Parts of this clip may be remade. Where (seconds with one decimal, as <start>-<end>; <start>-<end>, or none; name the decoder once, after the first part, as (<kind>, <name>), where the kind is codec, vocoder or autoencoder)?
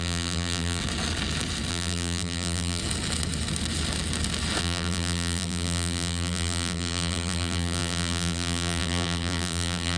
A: 0.0-0.8 (vocoder, BigVGAN v2); 1.7-2.8; 4.6-10.0